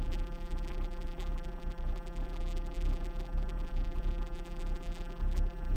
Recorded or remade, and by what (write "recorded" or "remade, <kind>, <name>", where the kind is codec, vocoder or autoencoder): remade, vocoder, BigVGAN v2